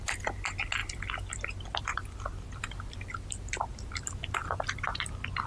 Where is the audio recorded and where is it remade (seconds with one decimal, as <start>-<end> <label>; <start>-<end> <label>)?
0.0-0.8 recorded; 0.8-2.6 remade; 2.6-4.4 recorded; 4.4-5.1 remade; 5.1-5.5 recorded